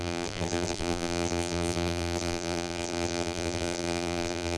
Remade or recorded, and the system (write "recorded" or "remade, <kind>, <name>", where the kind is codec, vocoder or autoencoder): remade, vocoder, BigVGAN v2